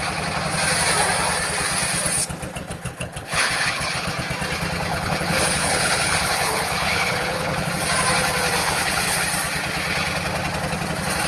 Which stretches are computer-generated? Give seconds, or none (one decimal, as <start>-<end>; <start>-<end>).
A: 2.6-4.1; 4.9-7.7; 8.6-9.2